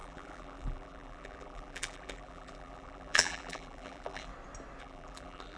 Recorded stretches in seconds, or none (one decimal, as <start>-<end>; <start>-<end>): 4.3-4.8

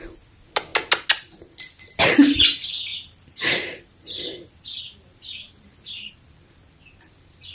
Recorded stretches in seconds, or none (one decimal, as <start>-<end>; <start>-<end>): 0.0-2.9; 6.1-7.5

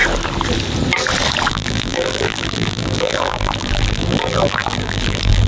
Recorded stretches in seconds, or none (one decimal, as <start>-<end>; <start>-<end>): 0.0-1.5

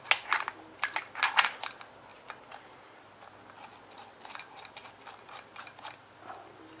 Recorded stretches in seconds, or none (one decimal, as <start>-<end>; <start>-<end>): 0.0-2.1; 3.0-6.8